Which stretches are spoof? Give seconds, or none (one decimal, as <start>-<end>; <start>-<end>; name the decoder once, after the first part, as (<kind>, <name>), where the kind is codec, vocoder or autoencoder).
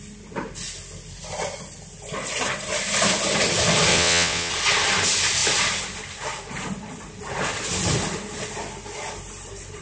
3.9-4.5 (vocoder, WaveNeXt)